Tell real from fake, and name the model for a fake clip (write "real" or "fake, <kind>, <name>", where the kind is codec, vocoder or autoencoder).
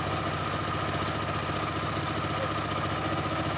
real